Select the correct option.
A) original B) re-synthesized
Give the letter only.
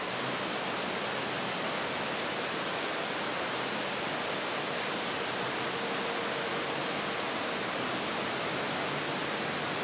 A